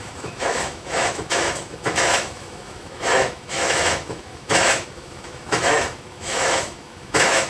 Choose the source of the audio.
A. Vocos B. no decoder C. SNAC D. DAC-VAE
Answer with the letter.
D